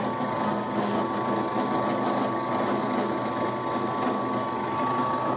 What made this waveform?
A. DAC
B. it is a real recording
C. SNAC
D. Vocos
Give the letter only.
B